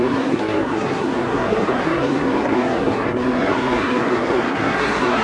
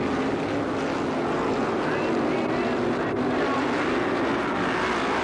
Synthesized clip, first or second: first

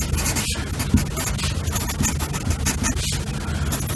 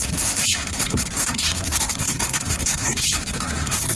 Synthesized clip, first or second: second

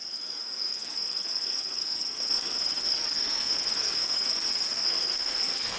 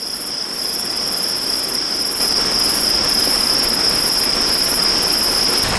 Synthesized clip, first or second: first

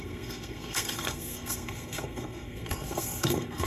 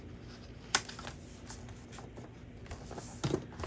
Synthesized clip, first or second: first